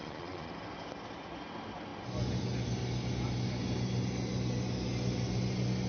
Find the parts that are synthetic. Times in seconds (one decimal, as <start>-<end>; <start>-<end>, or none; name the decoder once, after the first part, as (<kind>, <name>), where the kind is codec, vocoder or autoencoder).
0.0-0.5 (vocoder, Vocos)